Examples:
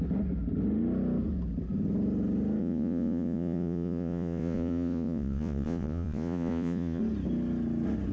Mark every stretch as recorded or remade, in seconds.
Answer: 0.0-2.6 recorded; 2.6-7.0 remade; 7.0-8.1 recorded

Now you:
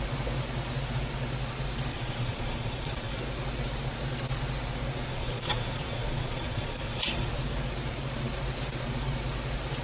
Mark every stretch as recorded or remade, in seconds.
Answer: 0.0-1.9 recorded; 1.9-3.2 remade; 3.2-5.1 recorded; 5.1-7.3 remade; 7.3-9.8 recorded

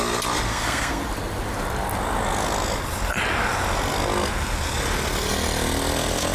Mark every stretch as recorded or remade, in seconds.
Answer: 0.0-0.5 recorded; 0.5-1.0 remade; 1.0-6.3 recorded

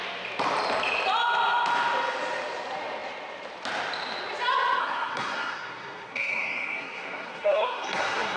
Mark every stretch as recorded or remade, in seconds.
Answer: 0.0-4.8 recorded; 4.8-8.4 remade